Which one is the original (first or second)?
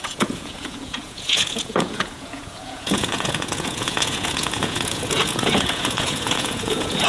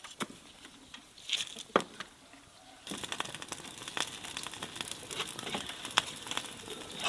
second